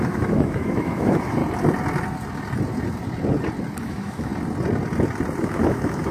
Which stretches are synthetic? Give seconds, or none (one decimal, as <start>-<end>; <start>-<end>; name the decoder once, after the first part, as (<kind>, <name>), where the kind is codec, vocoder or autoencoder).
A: 0.0-1.4 (autoencoder, DAC-VAE); 3.8-4.3; 5.4-6.1